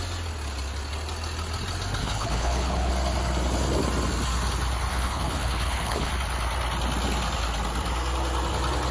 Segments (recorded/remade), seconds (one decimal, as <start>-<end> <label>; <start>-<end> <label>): 0.0-2.0 recorded; 2.0-2.9 remade; 2.9-4.9 recorded; 4.9-6.1 remade; 6.1-8.9 recorded